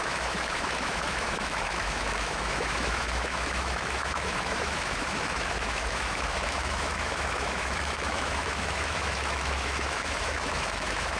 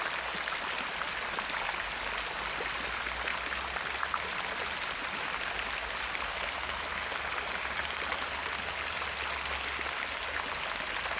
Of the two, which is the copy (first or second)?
first